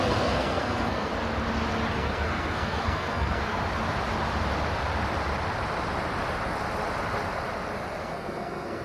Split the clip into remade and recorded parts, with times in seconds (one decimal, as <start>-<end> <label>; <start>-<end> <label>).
0.0-1.1 remade; 1.1-1.9 recorded; 1.9-3.6 remade; 3.6-8.0 recorded; 8.0-8.8 remade